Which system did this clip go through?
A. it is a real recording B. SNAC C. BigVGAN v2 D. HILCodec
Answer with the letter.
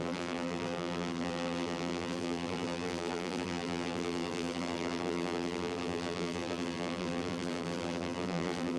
C